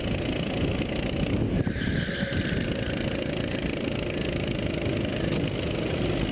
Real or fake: real